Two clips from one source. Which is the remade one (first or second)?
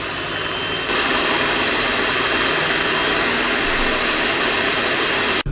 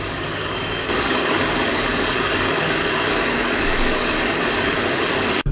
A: second